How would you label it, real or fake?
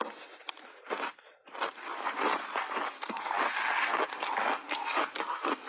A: real